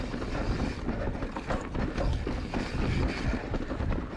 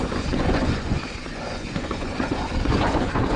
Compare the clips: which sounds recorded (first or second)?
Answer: first